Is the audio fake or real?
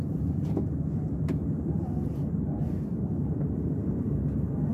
fake